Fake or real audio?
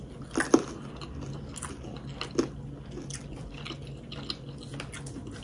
real